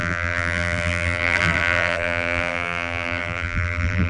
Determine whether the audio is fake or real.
fake